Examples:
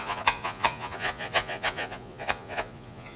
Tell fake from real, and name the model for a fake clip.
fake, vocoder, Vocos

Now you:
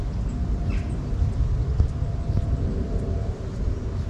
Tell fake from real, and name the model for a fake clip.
real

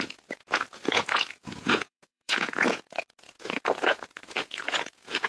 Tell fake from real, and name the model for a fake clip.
fake, vocoder, Vocos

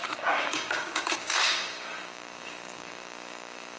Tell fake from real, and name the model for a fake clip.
fake, codec, DAC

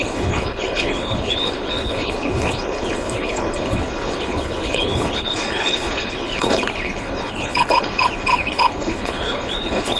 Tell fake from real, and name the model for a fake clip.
fake, codec, HILCodec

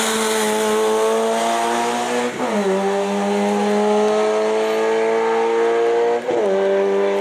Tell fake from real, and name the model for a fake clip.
real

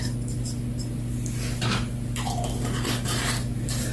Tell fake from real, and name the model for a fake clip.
real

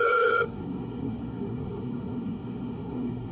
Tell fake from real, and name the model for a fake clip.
fake, codec, SNAC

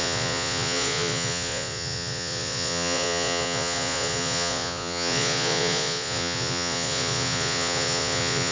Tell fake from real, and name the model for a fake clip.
fake, vocoder, Vocos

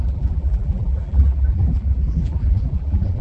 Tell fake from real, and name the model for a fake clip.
fake, vocoder, BigVGAN v2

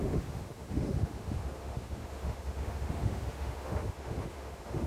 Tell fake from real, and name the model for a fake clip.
fake, autoencoder, DAC-VAE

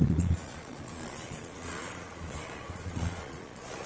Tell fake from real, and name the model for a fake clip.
fake, vocoder, Vocos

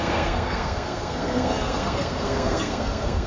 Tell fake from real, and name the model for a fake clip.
fake, codec, SNAC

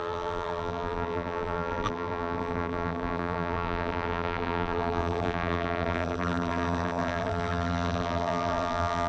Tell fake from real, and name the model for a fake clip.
fake, vocoder, BigVGAN v2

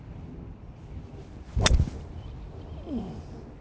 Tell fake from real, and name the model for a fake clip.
real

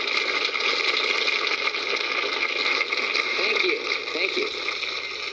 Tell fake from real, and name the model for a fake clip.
real